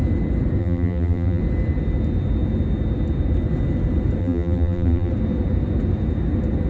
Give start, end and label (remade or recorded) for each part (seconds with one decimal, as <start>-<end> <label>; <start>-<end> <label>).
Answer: 0.0-0.6 recorded; 0.6-1.4 remade; 1.4-4.2 recorded; 4.2-5.1 remade; 5.1-6.7 recorded